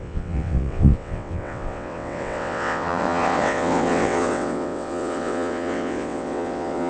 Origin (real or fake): fake